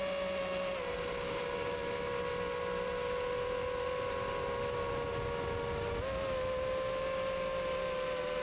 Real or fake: real